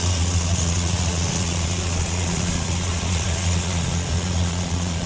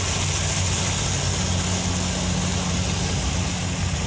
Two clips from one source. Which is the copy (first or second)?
first